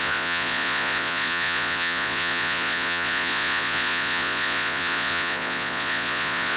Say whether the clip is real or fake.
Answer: fake